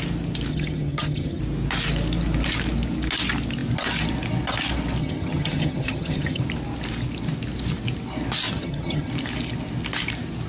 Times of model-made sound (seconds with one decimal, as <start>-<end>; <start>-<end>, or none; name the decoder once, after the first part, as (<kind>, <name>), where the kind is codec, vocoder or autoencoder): 0.5-1.4 (vocoder, HiFi-GAN); 5.0-6.4; 8.5-9.1